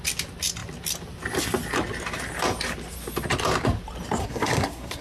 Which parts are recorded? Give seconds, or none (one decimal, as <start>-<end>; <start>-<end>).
0.0-4.2